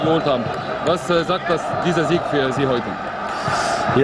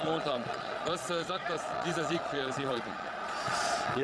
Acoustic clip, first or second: first